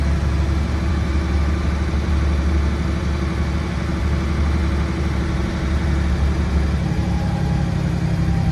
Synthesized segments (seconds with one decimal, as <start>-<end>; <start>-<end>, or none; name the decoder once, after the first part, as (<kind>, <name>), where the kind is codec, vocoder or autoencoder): none